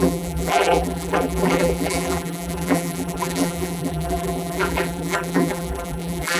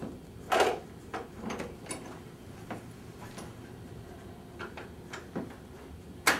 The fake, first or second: first